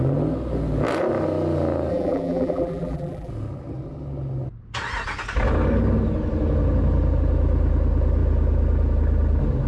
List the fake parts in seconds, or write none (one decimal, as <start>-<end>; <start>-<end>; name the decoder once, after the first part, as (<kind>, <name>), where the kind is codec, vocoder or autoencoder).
1.9-3.3 (vocoder, BigVGAN v2)